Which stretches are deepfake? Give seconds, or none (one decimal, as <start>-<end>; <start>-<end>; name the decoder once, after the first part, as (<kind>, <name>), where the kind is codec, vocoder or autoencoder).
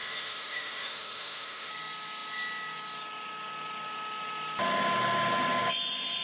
0.0-1.7 (autoencoder, DAC-VAE)